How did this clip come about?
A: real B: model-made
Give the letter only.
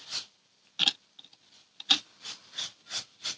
A